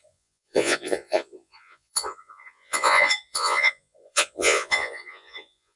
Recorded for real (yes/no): no